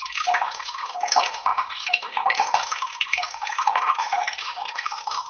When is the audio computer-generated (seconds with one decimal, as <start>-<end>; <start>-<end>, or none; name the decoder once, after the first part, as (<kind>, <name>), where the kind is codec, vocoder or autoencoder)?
0.0-5.3 (autoencoder, DAC-VAE)